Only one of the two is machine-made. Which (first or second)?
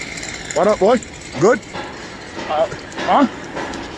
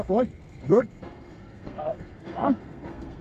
second